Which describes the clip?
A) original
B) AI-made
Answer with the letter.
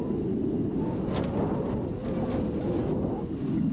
A